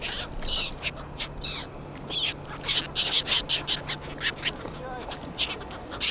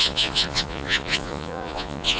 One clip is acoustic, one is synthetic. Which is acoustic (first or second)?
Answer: first